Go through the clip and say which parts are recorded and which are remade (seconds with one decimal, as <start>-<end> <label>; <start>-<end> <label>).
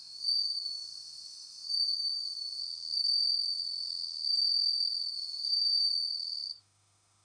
0.0-2.6 remade; 2.6-5.1 recorded; 5.1-5.9 remade; 5.9-6.6 recorded; 6.6-7.2 remade